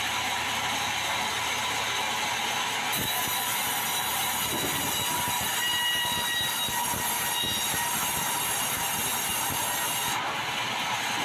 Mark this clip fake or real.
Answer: real